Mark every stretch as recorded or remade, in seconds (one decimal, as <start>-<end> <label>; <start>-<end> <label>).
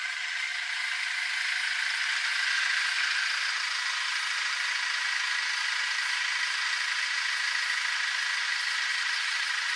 0.0-0.7 remade; 0.7-8.9 recorded; 8.9-9.8 remade